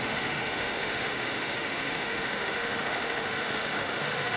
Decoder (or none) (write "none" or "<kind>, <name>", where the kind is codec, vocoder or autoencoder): autoencoder, DAC-VAE